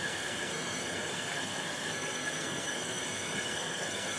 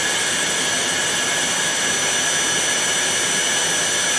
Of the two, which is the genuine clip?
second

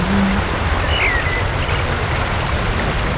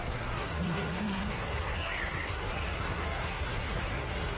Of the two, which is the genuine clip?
first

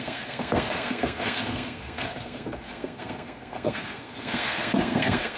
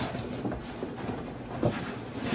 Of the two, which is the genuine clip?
second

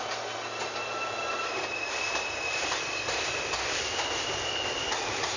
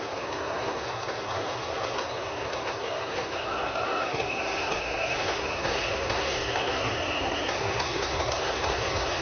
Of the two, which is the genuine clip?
first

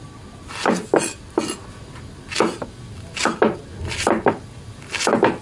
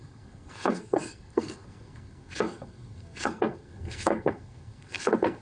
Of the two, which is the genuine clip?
first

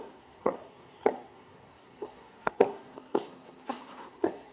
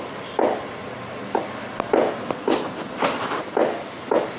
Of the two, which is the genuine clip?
second